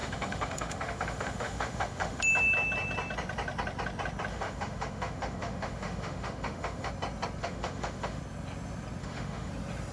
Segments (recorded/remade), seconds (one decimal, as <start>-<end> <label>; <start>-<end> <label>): 0.0-2.2 remade; 2.2-4.3 recorded; 4.3-6.9 remade; 6.9-7.4 recorded; 7.4-8.2 remade; 8.2-9.0 recorded; 9.0-9.5 remade; 9.5-9.9 recorded